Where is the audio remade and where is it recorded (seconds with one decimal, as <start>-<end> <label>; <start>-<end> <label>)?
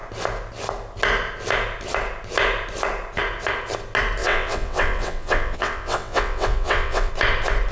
0.0-4.2 recorded; 4.2-7.1 remade; 7.1-7.7 recorded